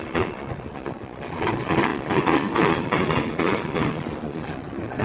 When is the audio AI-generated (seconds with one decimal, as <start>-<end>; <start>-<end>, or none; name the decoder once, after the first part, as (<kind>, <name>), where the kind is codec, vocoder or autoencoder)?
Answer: 0.0-5.0 (vocoder, Vocos)